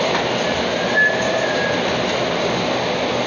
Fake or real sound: real